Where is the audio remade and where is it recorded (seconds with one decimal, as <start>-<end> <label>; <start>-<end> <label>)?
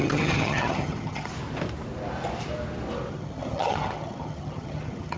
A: 0.0-1.3 remade; 1.3-3.1 recorded; 3.1-5.2 remade